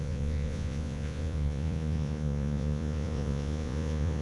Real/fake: fake